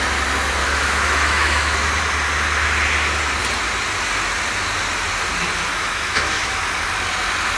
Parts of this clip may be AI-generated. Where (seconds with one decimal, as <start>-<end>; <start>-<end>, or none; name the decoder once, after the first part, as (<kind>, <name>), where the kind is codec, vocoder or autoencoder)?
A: 0.6-2.0 (autoencoder, DAC-VAE); 5.7-6.6